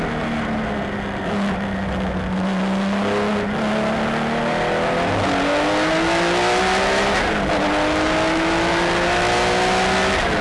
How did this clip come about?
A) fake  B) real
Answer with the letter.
B